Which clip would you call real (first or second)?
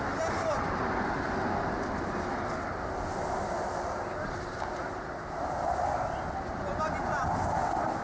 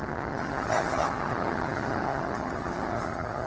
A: first